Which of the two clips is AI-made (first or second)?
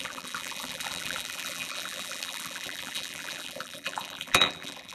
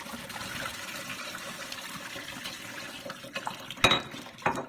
first